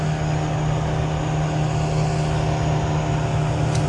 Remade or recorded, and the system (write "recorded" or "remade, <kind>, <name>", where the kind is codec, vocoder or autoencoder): recorded